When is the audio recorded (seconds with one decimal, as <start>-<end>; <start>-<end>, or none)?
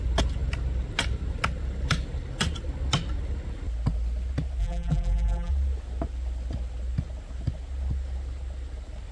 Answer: 0.0-4.6; 5.5-9.1